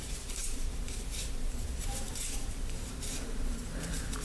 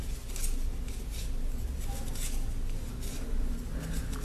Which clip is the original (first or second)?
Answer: second